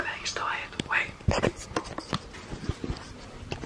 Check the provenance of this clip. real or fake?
real